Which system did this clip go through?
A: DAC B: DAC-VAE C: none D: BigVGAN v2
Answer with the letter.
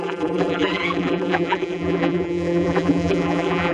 D